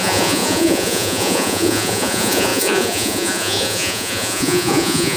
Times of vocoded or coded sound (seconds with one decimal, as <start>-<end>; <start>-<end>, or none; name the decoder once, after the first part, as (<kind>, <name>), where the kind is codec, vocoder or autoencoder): 0.0-5.2 (vocoder, Vocos)